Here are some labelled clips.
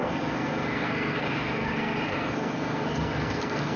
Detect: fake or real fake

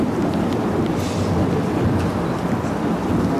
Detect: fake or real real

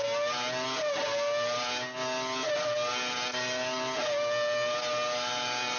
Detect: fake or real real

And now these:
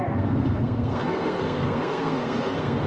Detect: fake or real fake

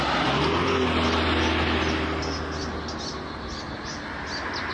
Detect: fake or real real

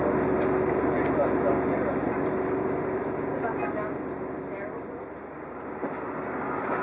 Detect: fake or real real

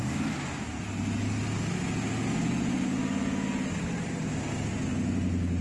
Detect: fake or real real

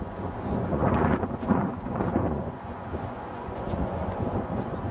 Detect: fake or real fake